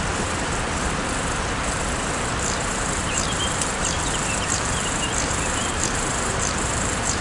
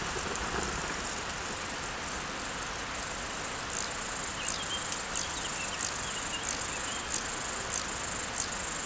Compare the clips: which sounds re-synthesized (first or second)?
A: first